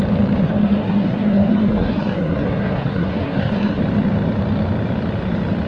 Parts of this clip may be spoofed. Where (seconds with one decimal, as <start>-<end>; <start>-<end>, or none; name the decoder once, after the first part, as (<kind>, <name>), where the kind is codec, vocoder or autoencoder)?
0.4-3.8 (codec, SNAC)